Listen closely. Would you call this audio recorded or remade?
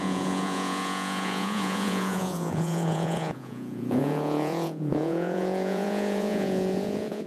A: remade